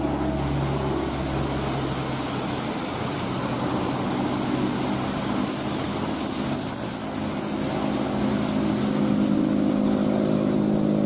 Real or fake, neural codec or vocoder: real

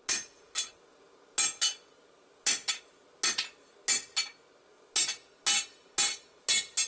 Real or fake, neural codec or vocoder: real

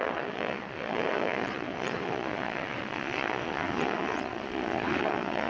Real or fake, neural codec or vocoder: fake, vocoder, Vocos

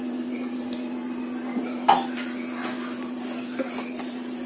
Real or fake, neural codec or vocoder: real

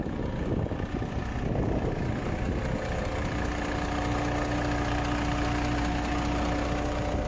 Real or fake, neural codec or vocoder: real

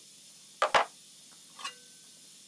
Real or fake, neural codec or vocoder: real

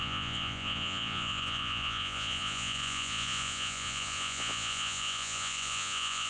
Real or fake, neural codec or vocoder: fake, vocoder, Vocos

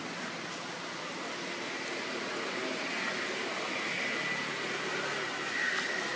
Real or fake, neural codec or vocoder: real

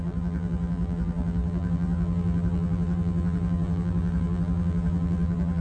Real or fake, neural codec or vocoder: fake, vocoder, BigVGAN v2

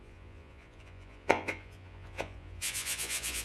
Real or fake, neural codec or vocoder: fake, vocoder, Vocos